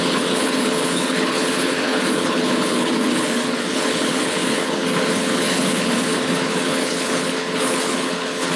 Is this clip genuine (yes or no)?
no